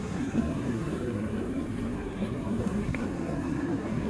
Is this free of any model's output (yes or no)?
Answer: no